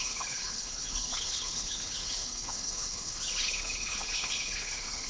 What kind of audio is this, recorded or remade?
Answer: remade